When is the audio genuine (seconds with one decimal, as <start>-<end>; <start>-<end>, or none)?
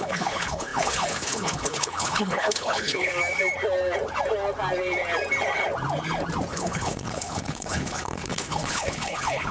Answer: 3.1-6.5